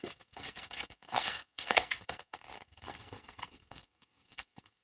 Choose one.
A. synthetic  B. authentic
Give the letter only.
A